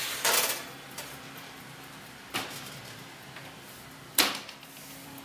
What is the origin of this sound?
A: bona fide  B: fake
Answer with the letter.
A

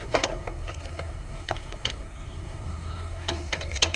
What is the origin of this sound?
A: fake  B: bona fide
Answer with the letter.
A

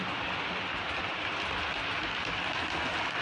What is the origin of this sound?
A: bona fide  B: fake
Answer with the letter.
A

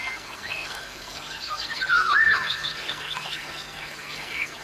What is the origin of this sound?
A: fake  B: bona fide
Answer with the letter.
A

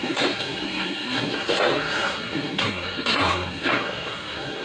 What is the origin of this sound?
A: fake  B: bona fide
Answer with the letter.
A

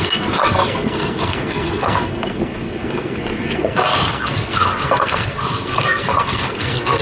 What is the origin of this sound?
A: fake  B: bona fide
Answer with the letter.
A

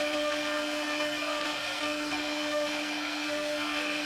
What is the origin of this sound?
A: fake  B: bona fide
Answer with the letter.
A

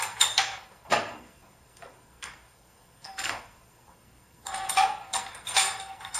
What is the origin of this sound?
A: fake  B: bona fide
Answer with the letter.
A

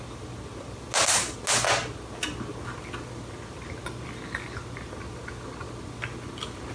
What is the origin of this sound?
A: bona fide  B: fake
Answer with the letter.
A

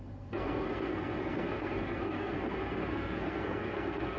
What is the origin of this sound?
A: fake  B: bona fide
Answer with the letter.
A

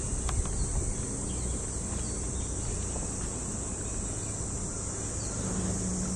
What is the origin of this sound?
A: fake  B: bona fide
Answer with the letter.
B